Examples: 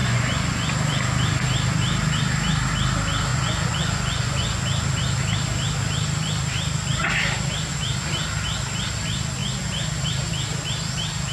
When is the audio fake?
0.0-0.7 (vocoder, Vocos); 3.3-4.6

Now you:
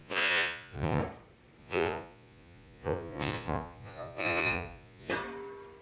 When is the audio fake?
0.0-1.0 (vocoder, Vocos); 1.6-5.1

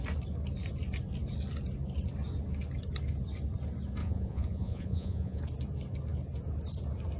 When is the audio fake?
4.0-5.4 (vocoder, Vocos)